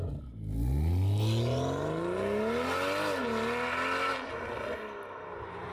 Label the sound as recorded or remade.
recorded